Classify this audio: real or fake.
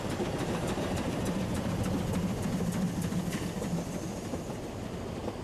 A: fake